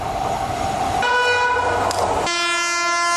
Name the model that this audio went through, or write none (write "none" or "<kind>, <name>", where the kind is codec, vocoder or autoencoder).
none